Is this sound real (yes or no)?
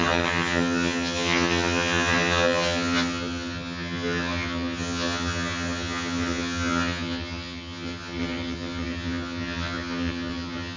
no